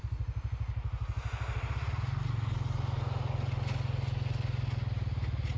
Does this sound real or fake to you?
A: real